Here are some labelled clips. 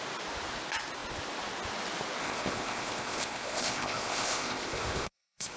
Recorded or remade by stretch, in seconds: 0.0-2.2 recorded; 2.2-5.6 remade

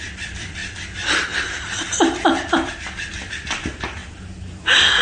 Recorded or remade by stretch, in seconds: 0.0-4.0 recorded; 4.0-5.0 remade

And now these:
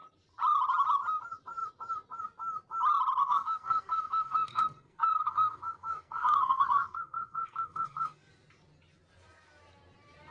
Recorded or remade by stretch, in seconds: 0.0-3.2 recorded; 3.2-8.3 remade; 8.3-10.3 recorded

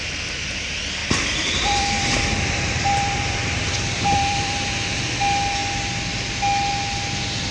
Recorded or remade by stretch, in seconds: 0.0-1.0 recorded; 1.0-5.0 remade; 5.0-7.5 recorded